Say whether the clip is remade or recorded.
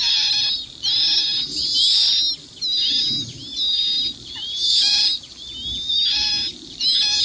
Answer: recorded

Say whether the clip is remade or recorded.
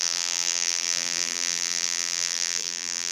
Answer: remade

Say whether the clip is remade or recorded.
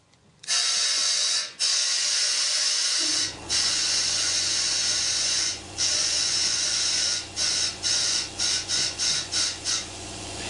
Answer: remade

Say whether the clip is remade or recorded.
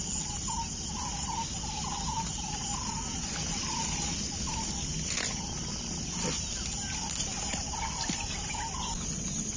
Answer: recorded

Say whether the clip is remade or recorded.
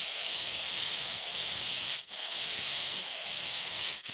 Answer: remade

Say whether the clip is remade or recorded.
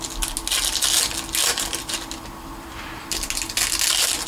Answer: recorded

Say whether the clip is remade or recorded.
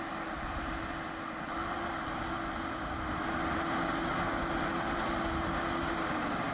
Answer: recorded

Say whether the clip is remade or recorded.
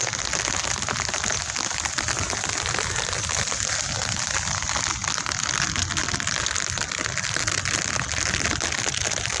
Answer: recorded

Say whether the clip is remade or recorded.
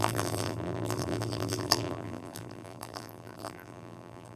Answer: remade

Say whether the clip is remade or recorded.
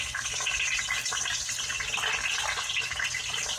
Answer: recorded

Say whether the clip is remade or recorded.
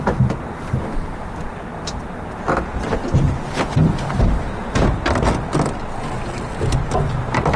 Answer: recorded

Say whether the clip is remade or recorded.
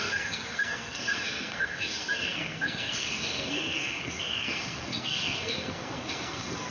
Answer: remade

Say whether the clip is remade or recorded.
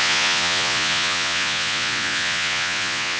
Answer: remade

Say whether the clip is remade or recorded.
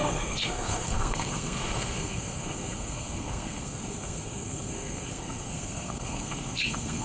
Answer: remade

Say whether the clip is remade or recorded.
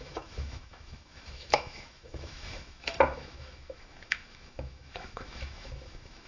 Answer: remade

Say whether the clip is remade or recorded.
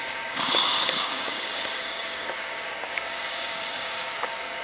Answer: remade